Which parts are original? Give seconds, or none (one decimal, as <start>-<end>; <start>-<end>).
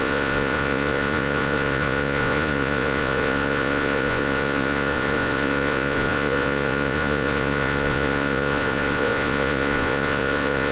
none